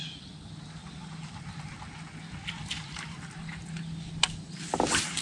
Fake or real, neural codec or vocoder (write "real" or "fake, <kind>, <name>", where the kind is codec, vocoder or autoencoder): real